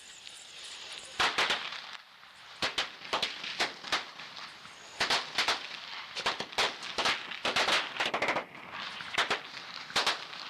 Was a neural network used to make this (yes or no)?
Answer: no